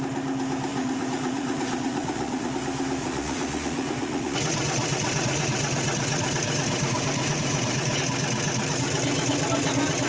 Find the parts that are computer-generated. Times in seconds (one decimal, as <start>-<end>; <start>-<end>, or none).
0.7-2.5; 3.0-8.0